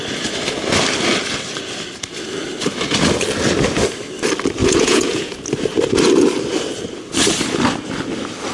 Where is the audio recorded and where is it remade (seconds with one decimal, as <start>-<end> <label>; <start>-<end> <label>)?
0.0-4.6 recorded; 4.6-5.4 remade; 5.4-8.5 recorded

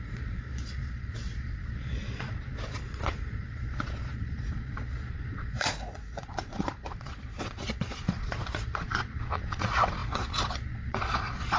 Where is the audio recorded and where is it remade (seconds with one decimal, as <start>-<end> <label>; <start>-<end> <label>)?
0.0-11.6 remade